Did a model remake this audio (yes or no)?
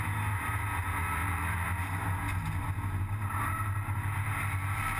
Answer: no